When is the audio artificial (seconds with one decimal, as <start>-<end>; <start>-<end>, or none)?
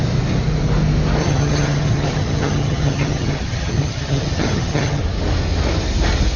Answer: 1.2-5.0